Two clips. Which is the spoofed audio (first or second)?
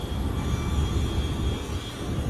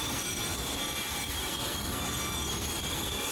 second